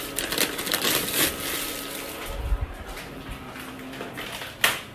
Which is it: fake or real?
real